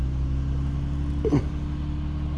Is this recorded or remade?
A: recorded